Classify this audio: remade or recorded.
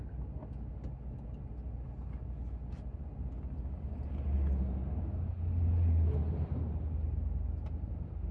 recorded